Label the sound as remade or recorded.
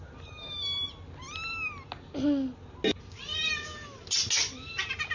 recorded